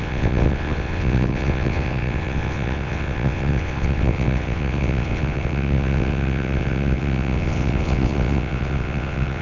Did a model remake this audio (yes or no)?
yes